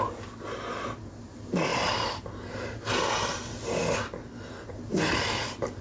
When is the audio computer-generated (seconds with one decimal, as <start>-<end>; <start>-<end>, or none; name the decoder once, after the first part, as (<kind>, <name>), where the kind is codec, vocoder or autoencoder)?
none